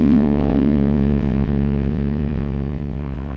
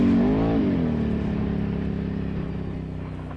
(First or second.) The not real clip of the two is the first